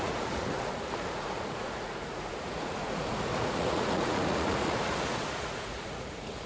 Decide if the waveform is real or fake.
fake